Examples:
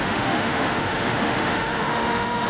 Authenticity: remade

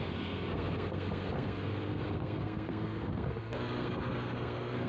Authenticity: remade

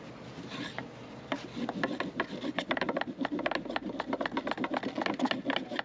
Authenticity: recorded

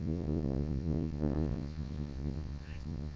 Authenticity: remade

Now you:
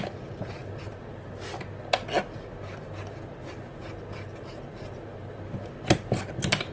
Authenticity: recorded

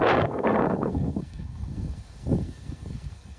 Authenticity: remade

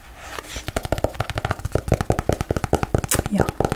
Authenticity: recorded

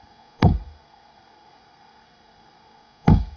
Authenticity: remade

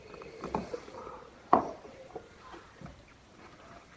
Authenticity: recorded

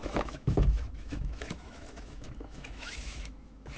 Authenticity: remade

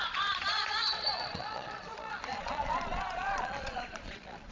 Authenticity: remade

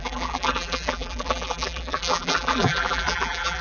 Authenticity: remade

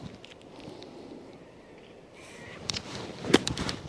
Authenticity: remade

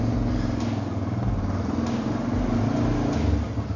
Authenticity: recorded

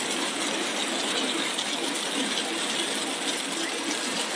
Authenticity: recorded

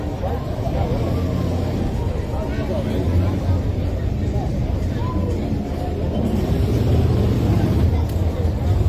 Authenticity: recorded